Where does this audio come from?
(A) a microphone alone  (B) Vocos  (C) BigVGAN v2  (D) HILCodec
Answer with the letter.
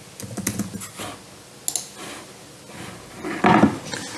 A